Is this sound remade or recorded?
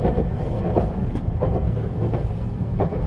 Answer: remade